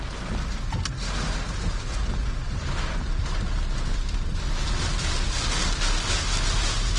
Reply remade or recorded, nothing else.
recorded